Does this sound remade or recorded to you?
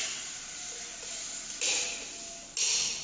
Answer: recorded